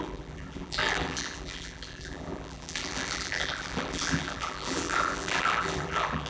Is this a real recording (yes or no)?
no